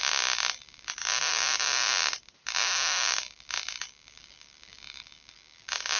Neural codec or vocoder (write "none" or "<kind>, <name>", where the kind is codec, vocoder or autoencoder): none